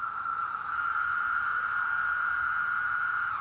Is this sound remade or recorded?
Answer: remade